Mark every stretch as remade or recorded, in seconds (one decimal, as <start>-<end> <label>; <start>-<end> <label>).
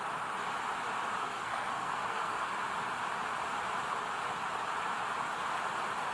0.0-1.2 recorded; 1.2-2.6 remade; 2.6-6.1 recorded